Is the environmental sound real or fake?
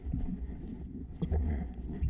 fake